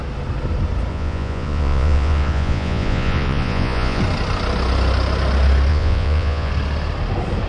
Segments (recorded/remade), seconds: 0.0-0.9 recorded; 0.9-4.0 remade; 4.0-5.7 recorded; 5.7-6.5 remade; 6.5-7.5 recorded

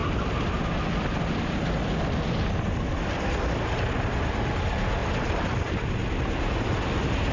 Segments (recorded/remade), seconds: 0.0-7.3 recorded

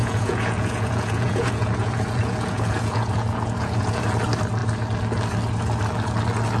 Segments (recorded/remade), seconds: 0.0-4.0 remade; 4.0-6.6 recorded

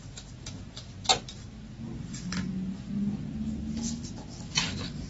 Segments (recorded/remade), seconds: 0.0-5.1 recorded

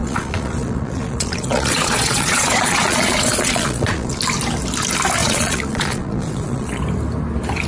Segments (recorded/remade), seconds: 0.0-4.2 remade; 4.2-5.2 recorded; 5.2-6.8 remade; 6.8-7.7 recorded

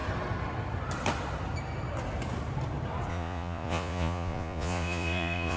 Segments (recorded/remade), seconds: 0.0-3.1 recorded; 3.1-5.6 remade